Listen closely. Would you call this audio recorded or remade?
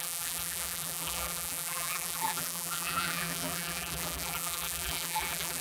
remade